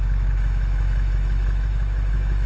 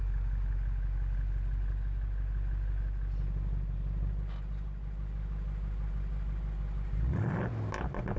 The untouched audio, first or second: second